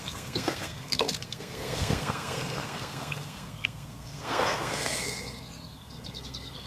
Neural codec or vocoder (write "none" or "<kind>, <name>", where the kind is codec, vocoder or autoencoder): codec, SNAC